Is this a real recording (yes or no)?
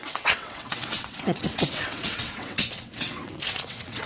no